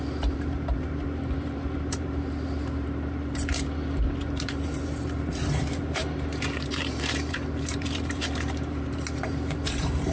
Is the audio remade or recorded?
remade